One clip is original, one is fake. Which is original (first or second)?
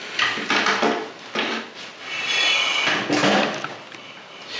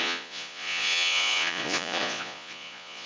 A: first